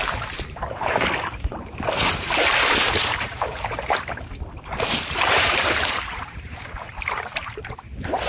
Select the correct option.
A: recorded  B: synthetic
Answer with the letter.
B